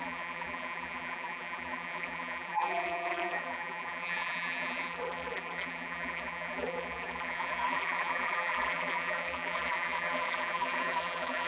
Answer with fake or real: fake